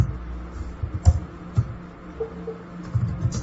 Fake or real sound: real